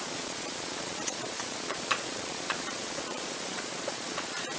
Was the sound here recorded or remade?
remade